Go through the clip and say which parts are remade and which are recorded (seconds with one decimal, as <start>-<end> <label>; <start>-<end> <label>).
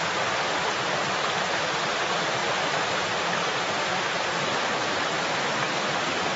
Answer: 0.0-2.4 recorded; 2.4-5.7 remade; 5.7-6.4 recorded